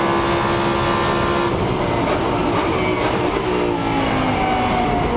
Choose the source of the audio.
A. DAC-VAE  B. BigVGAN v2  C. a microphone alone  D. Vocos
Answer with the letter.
C